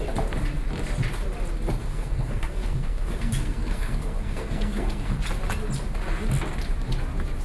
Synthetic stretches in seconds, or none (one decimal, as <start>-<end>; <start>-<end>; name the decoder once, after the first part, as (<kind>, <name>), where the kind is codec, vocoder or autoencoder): 1.8-5.2 (codec, SNAC)